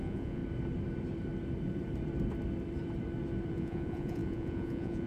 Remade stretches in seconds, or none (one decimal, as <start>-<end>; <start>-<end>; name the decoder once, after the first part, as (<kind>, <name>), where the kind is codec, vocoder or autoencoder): 0.0-0.4 (vocoder, Vocos); 3.5-5.1